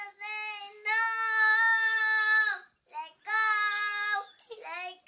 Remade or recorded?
recorded